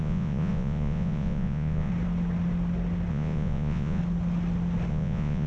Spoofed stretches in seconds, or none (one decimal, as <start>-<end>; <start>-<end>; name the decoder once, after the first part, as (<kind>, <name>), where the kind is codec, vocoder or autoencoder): 0.0-1.9 (vocoder, Vocos); 3.1-4.0; 4.9-5.5